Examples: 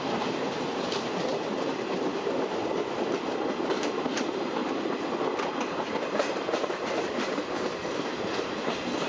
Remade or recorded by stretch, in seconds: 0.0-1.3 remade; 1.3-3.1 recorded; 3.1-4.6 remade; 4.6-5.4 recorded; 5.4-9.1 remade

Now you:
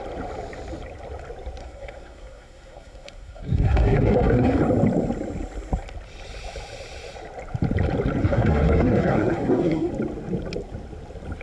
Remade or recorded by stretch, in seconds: 0.0-1.6 recorded; 1.6-4.6 remade; 4.6-8.2 recorded; 8.2-9.9 remade; 9.9-11.4 recorded

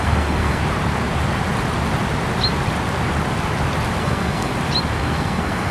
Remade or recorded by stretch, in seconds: 0.0-0.6 remade; 0.6-4.0 recorded; 4.0-4.5 remade; 4.5-5.0 recorded; 5.0-5.7 remade

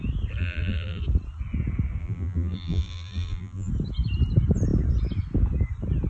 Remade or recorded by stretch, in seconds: 0.0-0.4 recorded; 0.4-1.0 remade; 1.0-2.0 recorded; 2.0-3.7 remade; 3.7-6.1 recorded

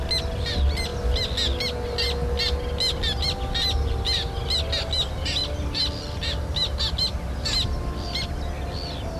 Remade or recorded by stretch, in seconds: 0.0-9.2 recorded